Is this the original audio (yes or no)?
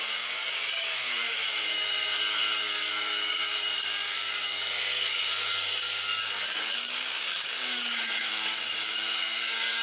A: no